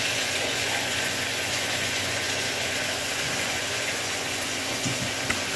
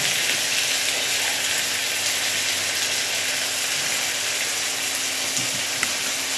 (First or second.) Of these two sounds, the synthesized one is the first